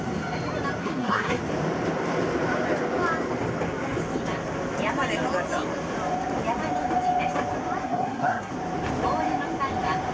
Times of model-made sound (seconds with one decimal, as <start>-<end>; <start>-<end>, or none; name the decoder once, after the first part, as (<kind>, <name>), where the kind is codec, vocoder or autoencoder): 0.8-1.4 (codec, SNAC); 7.8-8.5